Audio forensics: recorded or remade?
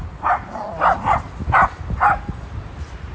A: recorded